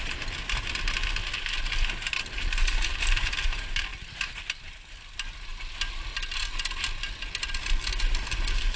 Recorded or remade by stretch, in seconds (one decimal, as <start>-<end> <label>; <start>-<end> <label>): 0.0-8.8 recorded